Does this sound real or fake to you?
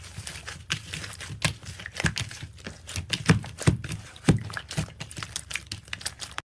real